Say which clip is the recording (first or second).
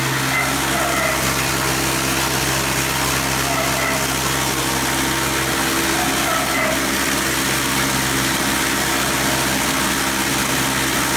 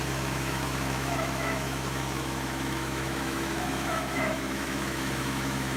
first